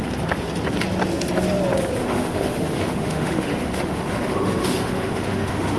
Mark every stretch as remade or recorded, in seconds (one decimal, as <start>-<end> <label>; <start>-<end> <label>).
0.0-2.0 recorded; 2.0-5.8 remade